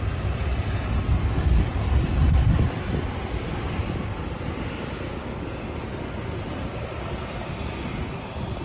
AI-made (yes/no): no